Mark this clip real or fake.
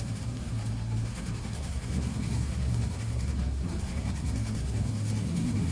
fake